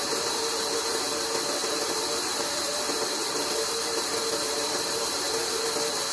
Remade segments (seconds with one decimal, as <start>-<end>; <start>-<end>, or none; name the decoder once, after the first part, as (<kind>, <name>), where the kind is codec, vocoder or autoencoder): 0.0-1.1 (vocoder, BigVGAN v2); 1.6-5.3